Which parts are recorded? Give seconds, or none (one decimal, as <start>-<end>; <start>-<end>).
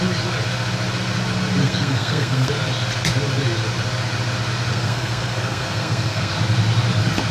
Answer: 0.0-1.6; 2.5-4.7; 6.3-7.3